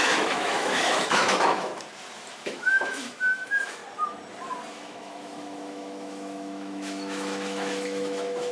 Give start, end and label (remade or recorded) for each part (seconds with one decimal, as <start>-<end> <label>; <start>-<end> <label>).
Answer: 0.0-1.7 remade; 1.7-2.3 recorded; 2.3-3.8 remade; 3.8-4.7 recorded; 4.7-8.5 remade